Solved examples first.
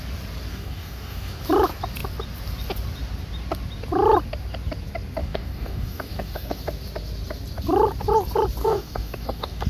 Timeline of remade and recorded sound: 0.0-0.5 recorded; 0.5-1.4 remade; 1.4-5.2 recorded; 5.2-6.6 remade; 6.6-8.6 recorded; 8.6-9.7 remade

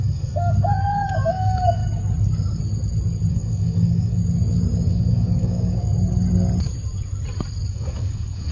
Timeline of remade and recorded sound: 0.0-1.8 remade; 1.8-3.3 recorded; 3.3-4.2 remade; 4.2-4.9 recorded; 4.9-5.9 remade; 5.9-7.7 recorded; 7.7-8.5 remade

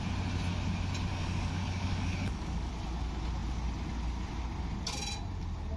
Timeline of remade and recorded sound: 0.0-1.1 recorded; 1.1-2.7 remade; 2.7-5.8 recorded

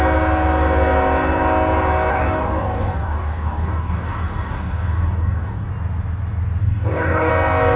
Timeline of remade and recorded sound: 0.0-2.1 recorded; 2.1-5.7 remade; 5.7-6.6 recorded; 6.6-7.3 remade; 7.3-7.8 recorded